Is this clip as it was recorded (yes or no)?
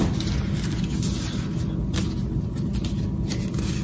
yes